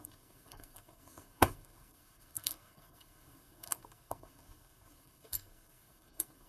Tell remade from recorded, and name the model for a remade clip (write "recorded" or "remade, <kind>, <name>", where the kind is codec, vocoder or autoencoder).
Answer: remade, codec, SNAC